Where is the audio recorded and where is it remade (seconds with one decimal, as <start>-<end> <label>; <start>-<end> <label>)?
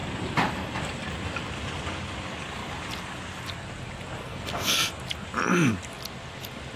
0.0-4.2 recorded; 4.2-4.9 remade; 4.9-6.8 recorded